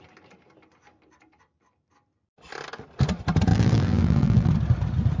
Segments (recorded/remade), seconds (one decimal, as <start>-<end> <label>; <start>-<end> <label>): 0.0-3.5 recorded; 3.5-4.5 remade; 4.5-5.2 recorded